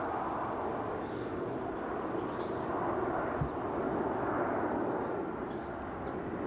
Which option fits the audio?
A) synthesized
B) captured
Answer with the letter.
B